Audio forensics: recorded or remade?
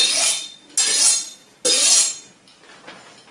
recorded